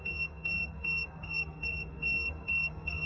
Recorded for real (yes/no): no